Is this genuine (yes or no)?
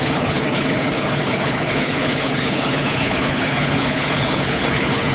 no